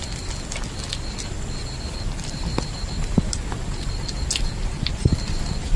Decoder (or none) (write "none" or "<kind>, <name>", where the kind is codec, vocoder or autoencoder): none